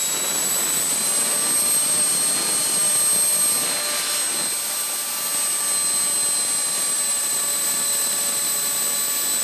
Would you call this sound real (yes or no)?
yes